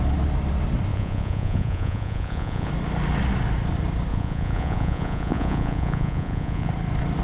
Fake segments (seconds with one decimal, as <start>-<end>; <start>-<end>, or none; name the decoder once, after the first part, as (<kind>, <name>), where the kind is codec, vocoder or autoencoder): 0.9-2.7 (vocoder, Vocos); 4.1-6.7